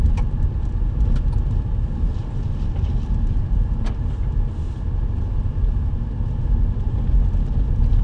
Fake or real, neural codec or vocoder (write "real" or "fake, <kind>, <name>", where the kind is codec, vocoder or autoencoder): real